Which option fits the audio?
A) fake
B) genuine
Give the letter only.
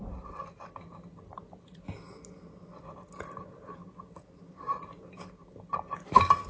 B